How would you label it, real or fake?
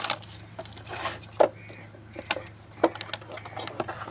real